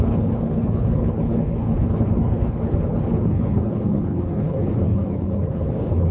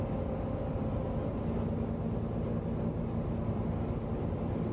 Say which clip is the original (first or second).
second